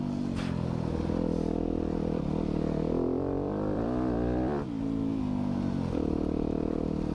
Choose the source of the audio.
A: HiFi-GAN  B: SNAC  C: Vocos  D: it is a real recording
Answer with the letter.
D